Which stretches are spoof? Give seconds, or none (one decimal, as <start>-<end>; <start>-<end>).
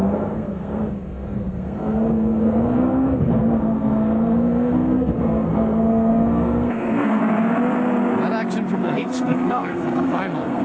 0.0-7.2; 8.7-10.6